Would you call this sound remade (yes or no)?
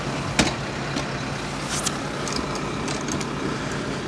no